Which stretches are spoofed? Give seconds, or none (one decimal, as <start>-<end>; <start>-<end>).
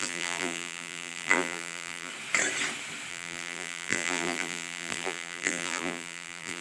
0.0-2.1; 3.1-6.6